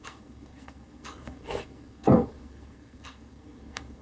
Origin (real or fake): fake